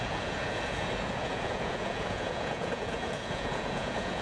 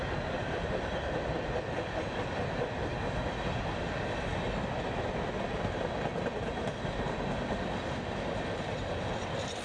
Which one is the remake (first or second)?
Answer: first